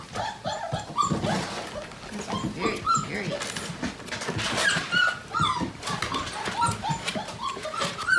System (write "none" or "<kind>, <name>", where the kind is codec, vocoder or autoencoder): none